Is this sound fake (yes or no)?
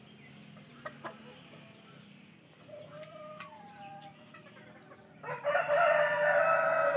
no